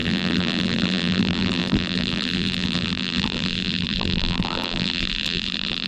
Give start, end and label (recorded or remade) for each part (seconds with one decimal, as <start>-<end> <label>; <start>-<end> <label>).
0.0-5.9 remade